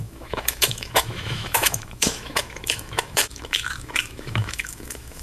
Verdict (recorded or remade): remade